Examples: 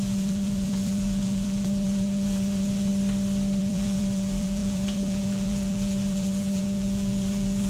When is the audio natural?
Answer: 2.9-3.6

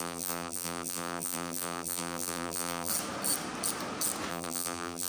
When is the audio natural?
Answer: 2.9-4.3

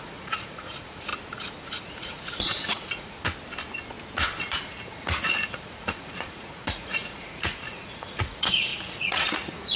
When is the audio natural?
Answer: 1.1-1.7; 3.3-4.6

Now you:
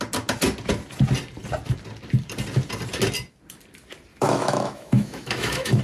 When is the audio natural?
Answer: 0.0-4.1

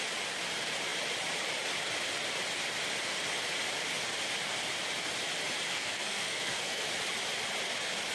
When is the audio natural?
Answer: 0.0-5.7; 6.9-8.1

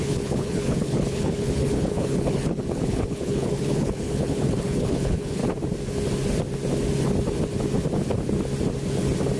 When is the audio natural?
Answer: 5.4-9.4

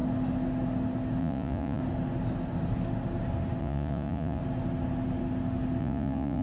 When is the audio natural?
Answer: 0.0-1.2; 1.8-3.6; 4.4-5.8